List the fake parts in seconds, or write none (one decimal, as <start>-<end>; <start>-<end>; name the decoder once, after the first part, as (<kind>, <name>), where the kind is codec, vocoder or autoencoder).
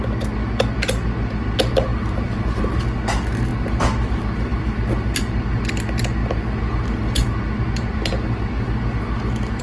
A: 1.9-2.7 (vocoder, BigVGAN v2); 4.5-5.2